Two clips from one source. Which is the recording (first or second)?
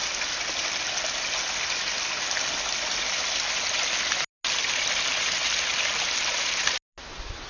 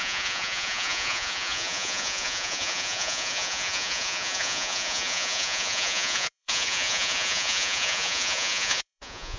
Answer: first